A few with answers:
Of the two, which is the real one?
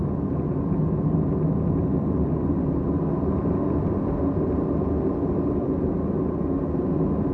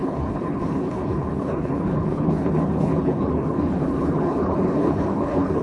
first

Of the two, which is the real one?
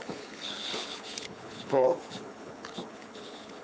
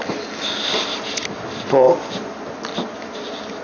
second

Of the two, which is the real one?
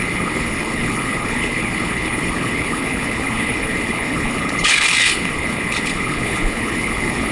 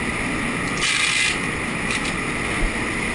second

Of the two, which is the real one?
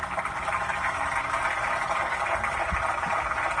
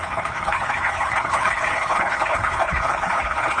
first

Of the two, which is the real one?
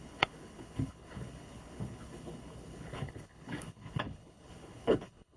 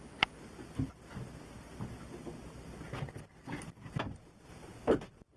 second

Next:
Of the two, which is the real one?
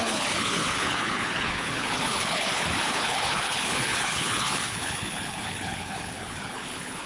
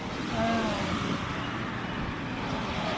second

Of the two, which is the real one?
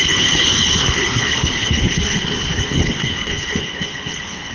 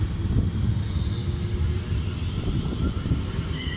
second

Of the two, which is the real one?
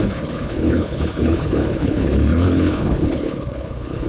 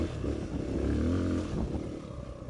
second